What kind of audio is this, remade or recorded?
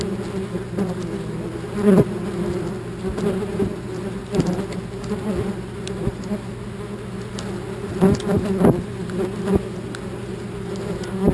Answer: recorded